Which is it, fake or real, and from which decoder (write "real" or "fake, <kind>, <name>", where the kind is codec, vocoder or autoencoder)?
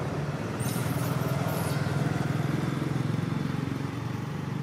fake, vocoder, BigVGAN v2